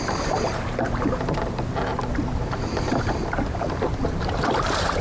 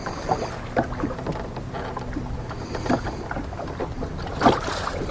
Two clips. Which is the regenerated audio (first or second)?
first